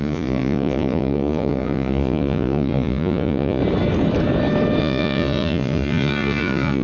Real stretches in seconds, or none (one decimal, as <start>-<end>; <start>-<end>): 3.6-4.8